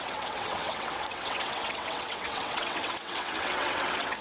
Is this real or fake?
fake